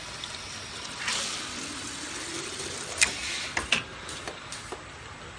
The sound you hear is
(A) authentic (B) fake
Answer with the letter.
A